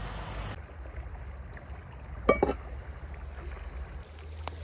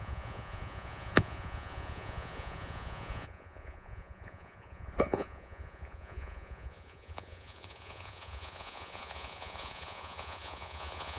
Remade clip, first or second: second